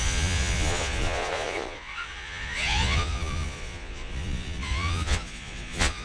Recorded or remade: remade